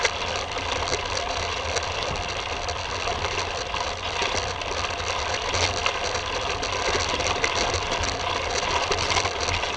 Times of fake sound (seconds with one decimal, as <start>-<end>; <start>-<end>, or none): none